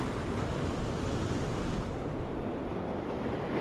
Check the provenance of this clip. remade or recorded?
recorded